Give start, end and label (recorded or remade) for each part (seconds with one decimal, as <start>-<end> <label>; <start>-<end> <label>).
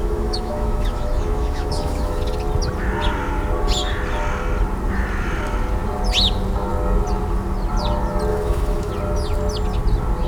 0.0-2.2 remade; 2.2-8.3 recorded; 8.3-8.9 remade; 8.9-10.3 recorded